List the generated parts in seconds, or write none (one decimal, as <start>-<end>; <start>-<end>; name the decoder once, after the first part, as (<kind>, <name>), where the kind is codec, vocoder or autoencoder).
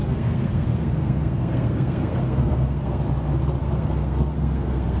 0.0-3.0 (codec, SNAC); 3.6-5.0